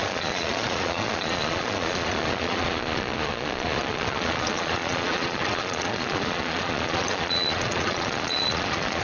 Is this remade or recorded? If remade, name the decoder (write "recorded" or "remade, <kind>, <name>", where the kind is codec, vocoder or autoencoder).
remade, vocoder, Vocos